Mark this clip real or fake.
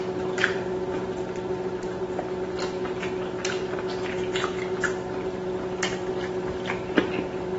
fake